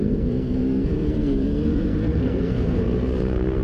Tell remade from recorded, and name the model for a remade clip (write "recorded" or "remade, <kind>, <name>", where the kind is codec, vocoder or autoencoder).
remade, codec, SNAC